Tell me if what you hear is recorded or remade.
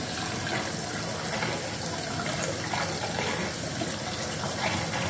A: recorded